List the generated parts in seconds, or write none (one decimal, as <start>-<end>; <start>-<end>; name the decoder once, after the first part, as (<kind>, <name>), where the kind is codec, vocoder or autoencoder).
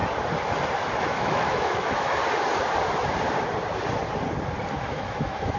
1.0-2.2 (autoencoder, DAC-VAE); 4.7-5.6